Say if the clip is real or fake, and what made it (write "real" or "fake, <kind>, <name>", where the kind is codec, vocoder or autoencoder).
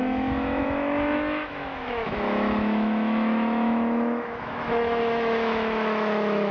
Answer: fake, autoencoder, DAC-VAE